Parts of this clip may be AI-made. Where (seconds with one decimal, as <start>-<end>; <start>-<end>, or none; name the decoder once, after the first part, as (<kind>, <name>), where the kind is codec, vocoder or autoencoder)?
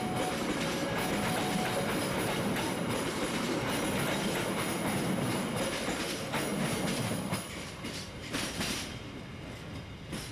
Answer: 2.0-3.5 (vocoder, BigVGAN v2); 6.5-9.2